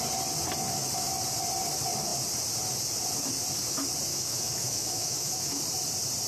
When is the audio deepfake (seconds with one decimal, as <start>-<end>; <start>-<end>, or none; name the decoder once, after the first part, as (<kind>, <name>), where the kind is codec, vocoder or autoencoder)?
4.1-5.6 (autoencoder, DAC-VAE)